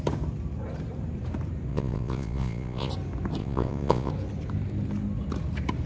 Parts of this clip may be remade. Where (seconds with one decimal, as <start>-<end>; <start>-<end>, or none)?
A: 1.7-2.9; 3.4-4.1